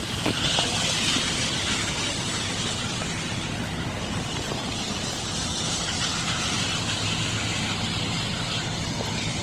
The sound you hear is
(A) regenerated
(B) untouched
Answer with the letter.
B